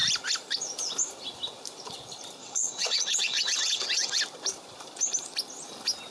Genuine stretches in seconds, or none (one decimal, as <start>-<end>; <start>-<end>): 0.0-2.4; 4.2-6.1